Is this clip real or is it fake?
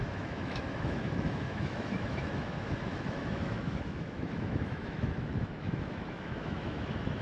fake